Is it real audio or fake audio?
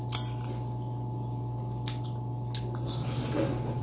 real